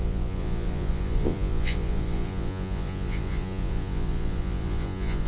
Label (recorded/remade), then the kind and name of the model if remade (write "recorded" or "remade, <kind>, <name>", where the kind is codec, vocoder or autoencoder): remade, vocoder, Vocos